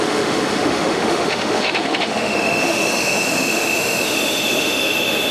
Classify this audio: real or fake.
fake